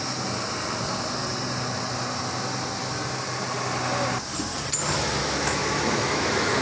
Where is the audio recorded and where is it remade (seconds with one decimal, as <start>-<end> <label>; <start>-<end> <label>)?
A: 0.0-5.2 recorded; 5.2-6.6 remade